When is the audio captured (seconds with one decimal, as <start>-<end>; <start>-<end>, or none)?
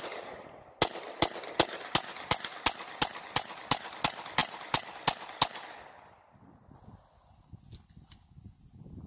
0.0-9.1